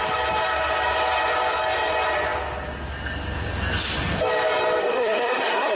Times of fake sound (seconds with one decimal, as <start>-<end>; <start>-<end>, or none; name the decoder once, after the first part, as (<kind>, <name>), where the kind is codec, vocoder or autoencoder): 4.8-5.8 (codec, SNAC)